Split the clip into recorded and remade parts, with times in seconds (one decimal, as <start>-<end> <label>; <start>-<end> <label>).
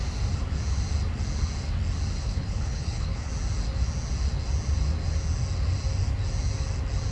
0.0-2.2 recorded; 2.2-3.3 remade; 3.3-7.1 recorded